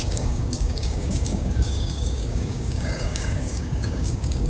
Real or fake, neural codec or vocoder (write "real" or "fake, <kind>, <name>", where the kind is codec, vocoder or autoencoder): fake, codec, DAC